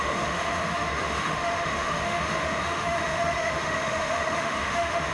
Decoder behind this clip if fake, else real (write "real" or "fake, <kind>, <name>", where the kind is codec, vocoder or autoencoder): fake, autoencoder, DAC-VAE